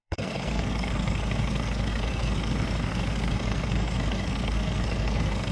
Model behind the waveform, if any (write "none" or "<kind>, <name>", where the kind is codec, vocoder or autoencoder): codec, SNAC